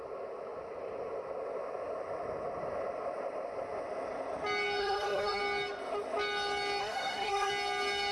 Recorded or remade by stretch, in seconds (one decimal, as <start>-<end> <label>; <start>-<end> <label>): 0.0-4.8 recorded; 4.8-5.4 remade; 5.4-6.8 recorded; 6.8-7.5 remade; 7.5-8.1 recorded